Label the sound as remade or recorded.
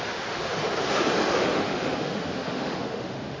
remade